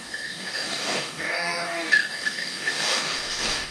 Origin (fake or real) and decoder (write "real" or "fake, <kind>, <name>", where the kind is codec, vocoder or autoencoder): fake, codec, DAC